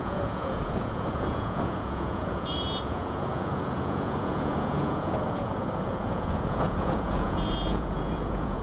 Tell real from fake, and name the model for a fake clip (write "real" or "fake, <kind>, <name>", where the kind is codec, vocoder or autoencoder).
fake, vocoder, Vocos